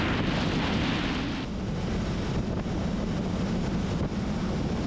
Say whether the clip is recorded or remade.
recorded